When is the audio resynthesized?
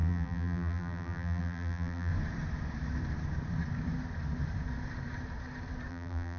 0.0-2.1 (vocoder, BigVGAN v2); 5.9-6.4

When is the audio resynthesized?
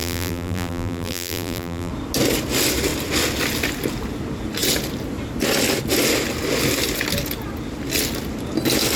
0.0-1.9 (vocoder, BigVGAN v2)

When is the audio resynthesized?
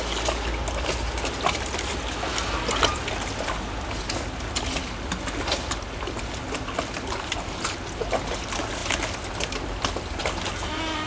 none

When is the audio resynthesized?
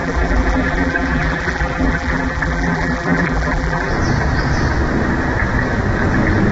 0.0-3.9 (vocoder, BigVGAN v2)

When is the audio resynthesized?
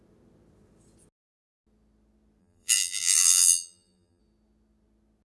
2.4-4.2 (vocoder, BigVGAN v2)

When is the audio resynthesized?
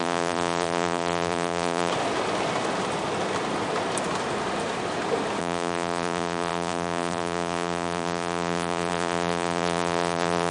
0.0-1.9 (vocoder, BigVGAN v2); 5.4-10.5